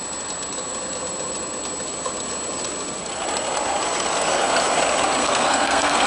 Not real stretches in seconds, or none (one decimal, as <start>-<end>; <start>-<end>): 5.2-6.1

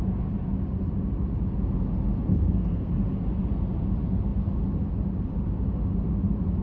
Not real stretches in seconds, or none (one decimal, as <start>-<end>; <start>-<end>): 2.3-2.9

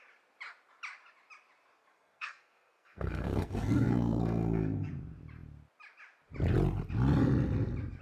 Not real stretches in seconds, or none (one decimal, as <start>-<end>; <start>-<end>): 1.8-4.9

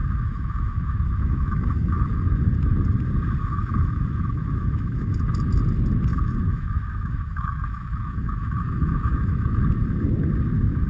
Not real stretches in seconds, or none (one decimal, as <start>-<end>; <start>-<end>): 0.0-2.4; 3.4-5.1; 6.1-9.6

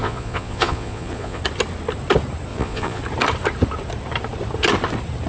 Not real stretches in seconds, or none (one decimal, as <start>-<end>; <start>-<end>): 0.0-1.4; 2.5-3.0

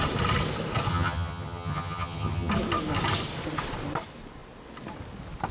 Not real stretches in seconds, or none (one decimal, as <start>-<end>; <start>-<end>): 0.9-2.5

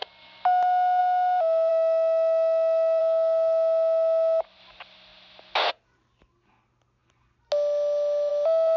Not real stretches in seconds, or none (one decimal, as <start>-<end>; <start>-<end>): 1.7-3.0